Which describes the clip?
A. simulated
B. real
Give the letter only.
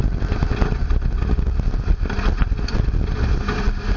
B